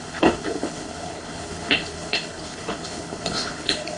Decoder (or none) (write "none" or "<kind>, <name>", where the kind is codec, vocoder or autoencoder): codec, HILCodec